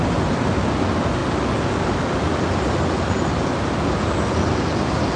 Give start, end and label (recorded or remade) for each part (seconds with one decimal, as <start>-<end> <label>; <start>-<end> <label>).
0.0-5.2 recorded